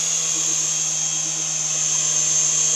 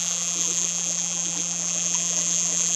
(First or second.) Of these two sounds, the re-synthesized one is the second